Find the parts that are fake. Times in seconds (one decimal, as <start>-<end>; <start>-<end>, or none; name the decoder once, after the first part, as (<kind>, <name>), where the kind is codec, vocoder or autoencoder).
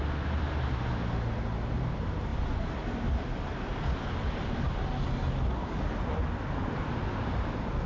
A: none